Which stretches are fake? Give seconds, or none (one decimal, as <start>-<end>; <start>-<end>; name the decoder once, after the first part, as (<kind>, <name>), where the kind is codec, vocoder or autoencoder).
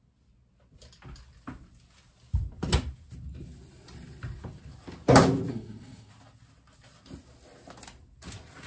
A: 5.5-6.1 (codec, SNAC)